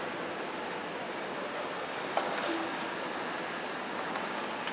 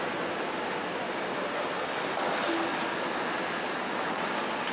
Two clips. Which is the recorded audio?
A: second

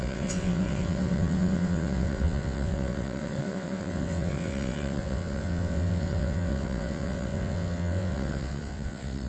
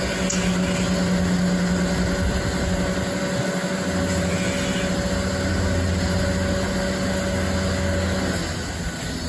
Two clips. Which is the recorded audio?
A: second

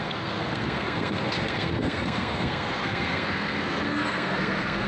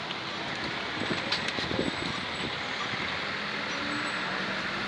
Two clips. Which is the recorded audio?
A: second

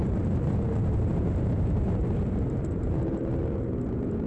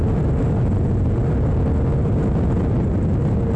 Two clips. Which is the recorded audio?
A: second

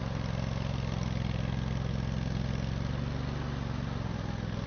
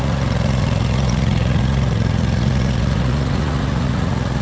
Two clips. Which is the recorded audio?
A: first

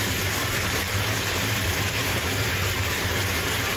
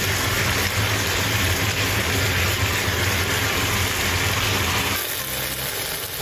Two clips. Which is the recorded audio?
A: second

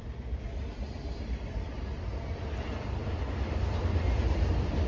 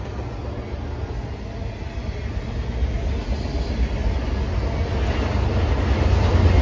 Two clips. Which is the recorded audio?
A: second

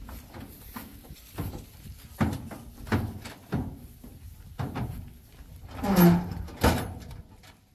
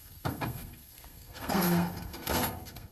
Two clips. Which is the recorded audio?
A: first